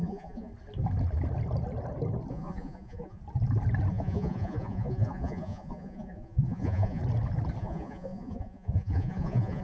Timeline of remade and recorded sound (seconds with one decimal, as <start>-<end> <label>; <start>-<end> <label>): 0.0-0.5 remade; 0.5-2.3 recorded; 2.3-3.2 remade; 3.2-3.9 recorded; 3.9-7.0 remade; 7.0-7.6 recorded; 7.6-9.6 remade